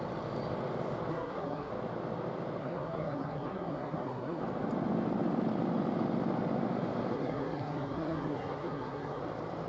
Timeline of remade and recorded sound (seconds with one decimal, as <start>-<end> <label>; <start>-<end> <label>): 0.0-1.1 recorded; 1.1-1.7 remade; 1.7-2.6 recorded; 2.6-4.4 remade; 4.4-7.1 recorded; 7.1-9.2 remade; 9.2-9.7 recorded